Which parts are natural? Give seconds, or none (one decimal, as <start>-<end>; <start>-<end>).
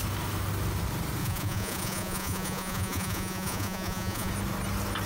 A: 0.0-1.2; 4.3-5.1